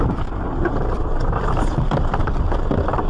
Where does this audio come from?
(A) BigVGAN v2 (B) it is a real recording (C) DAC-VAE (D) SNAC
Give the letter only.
A